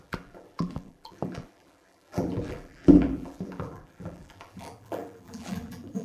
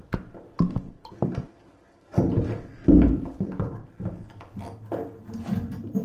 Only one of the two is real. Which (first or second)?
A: second